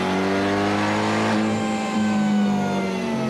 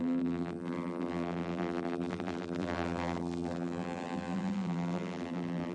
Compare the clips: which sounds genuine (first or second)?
first